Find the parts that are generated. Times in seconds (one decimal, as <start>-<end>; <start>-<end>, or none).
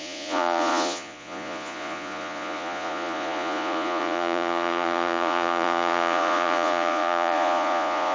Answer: 0.0-8.1